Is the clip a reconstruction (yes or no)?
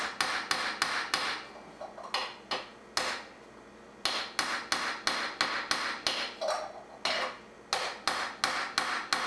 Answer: no